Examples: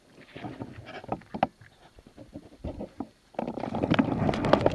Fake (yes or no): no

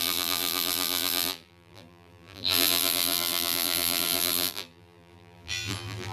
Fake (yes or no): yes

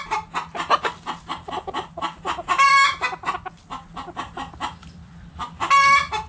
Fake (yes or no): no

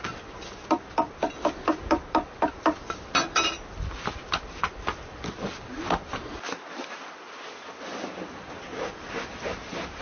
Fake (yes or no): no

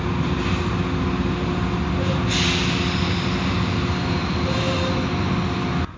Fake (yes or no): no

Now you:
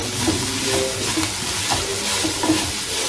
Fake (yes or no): no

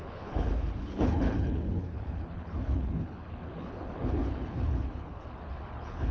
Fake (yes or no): yes